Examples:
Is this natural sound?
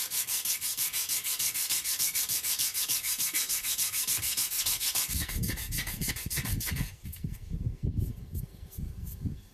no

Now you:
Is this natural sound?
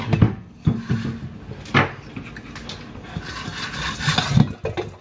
yes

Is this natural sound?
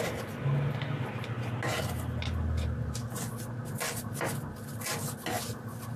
yes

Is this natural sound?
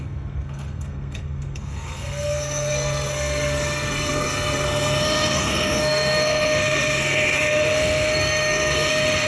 no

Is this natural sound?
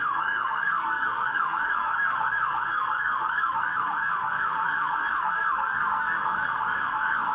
no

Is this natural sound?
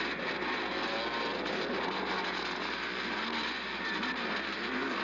yes